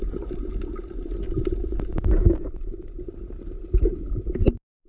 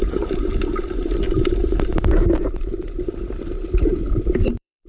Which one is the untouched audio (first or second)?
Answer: first